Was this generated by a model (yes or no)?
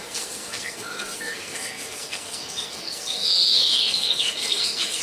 yes